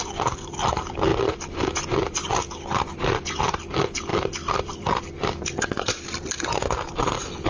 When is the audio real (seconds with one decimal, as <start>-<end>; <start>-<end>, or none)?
1.1-1.7; 2.2-3.6